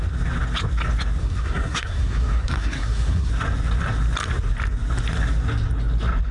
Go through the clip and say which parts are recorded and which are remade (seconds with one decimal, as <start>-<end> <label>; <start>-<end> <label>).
0.0-1.2 recorded; 1.2-3.3 remade; 3.3-6.3 recorded